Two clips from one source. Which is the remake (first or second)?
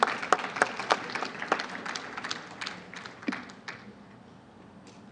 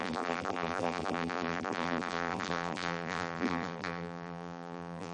second